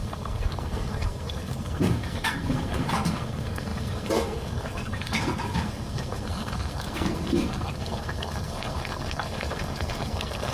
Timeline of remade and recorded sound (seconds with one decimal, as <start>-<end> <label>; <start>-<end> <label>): 0.0-10.5 remade